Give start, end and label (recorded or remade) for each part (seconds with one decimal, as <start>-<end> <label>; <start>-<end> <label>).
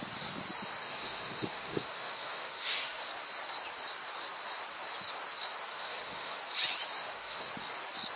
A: 0.0-0.8 recorded; 0.8-3.1 remade; 3.1-5.7 recorded; 5.7-6.4 remade; 6.4-7.0 recorded; 7.0-7.5 remade; 7.5-8.2 recorded